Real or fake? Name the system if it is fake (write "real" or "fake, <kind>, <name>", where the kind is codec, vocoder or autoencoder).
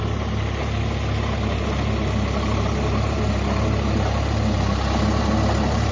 real